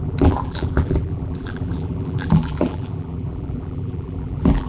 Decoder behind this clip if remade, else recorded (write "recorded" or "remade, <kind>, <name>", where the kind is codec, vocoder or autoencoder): remade, vocoder, BigVGAN v2